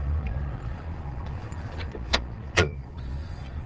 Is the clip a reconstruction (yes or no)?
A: yes